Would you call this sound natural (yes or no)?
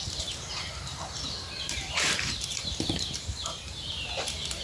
no